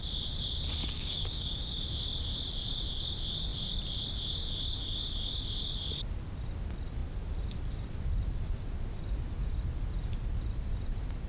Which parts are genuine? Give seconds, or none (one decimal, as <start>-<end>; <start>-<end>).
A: 0.0-0.8; 1.7-11.3